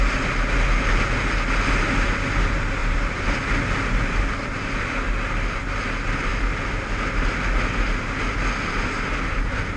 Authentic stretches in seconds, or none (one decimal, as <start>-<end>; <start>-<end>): 0.0-2.8; 3.4-9.8